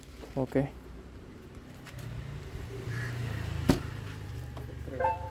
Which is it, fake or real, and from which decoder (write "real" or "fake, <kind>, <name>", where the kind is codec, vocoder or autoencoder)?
fake, vocoder, BigVGAN v2